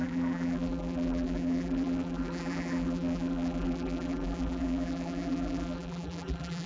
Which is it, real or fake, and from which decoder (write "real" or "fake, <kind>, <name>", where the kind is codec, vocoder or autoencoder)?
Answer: fake, vocoder, BigVGAN v2